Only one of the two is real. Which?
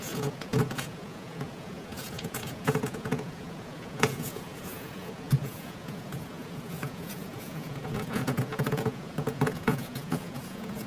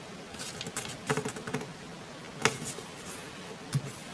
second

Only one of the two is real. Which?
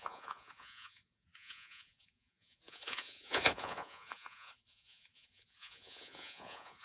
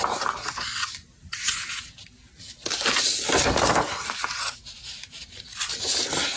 second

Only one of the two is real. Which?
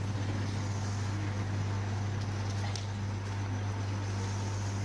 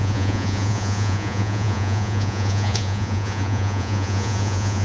first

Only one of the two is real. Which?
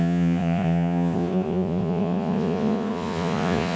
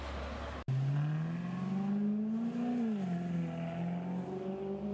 second